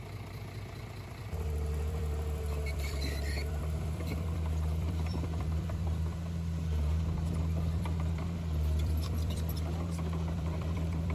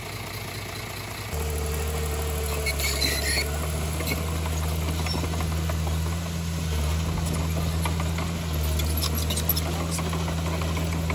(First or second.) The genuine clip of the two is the second